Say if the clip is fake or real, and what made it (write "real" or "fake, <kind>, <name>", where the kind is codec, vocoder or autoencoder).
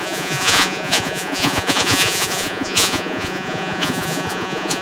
fake, vocoder, Vocos